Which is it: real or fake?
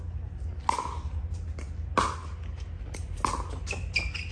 real